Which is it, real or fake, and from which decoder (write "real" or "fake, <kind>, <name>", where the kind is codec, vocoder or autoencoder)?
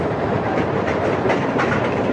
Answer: fake, vocoder, BigVGAN v2